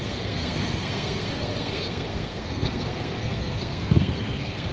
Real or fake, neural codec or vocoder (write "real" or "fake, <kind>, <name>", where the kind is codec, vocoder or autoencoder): fake, codec, SNAC